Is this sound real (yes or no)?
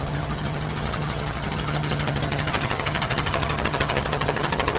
no